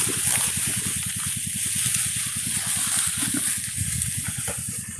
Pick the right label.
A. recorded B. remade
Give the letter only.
A